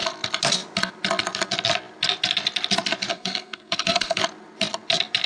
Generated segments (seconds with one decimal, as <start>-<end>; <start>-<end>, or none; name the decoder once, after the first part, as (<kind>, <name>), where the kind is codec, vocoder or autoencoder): 3.1-4.2 (codec, SNAC)